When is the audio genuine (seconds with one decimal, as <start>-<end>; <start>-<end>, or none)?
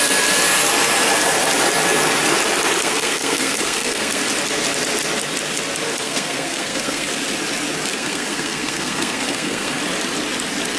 0.0-2.8; 4.2-5.9; 7.1-7.9; 9.8-10.8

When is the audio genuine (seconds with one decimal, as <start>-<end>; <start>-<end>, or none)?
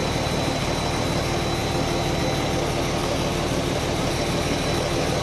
0.6-3.0; 4.1-5.2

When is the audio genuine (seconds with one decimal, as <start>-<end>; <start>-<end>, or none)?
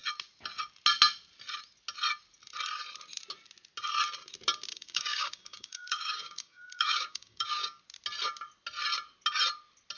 0.0-4.7; 7.8-10.0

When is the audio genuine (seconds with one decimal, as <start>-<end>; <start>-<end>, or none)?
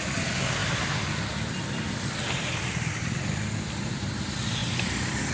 0.0-5.3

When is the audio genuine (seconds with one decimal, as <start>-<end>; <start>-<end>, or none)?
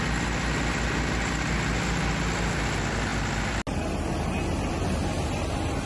0.0-5.9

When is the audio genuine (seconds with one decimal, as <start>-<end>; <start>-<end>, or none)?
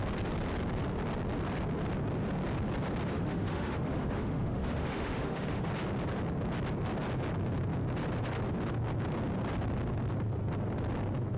0.0-3.1; 5.7-11.4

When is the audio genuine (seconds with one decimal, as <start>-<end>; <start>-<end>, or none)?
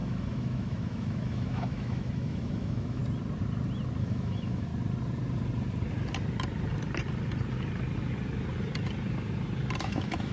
3.0-4.0; 4.7-9.8